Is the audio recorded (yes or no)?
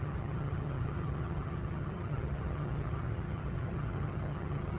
no